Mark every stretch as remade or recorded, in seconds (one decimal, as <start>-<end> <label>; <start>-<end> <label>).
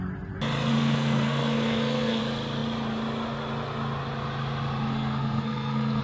0.0-0.7 recorded; 0.7-2.2 remade; 2.2-4.9 recorded; 4.9-6.0 remade